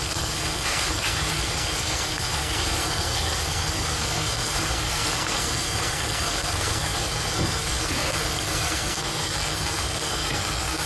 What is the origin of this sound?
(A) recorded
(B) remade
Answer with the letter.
B